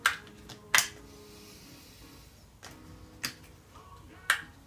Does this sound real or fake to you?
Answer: real